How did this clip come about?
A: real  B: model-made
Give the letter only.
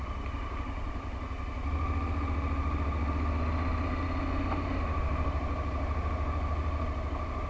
A